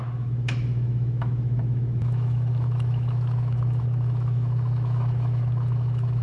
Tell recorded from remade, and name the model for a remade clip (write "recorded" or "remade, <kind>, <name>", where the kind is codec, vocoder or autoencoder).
remade, autoencoder, DAC-VAE